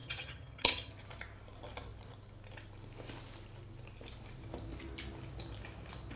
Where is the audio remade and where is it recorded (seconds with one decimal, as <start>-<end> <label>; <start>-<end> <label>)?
0.0-0.9 remade; 0.9-6.2 recorded